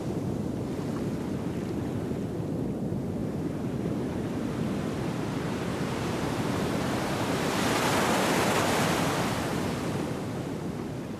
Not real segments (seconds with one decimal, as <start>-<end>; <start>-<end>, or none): 3.2-7.9